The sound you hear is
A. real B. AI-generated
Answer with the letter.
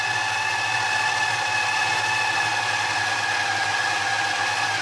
A